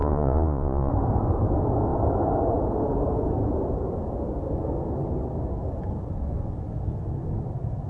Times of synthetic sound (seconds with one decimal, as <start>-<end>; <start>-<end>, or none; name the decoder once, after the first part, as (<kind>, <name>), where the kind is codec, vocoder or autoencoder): 0.0-0.9 (vocoder, Vocos)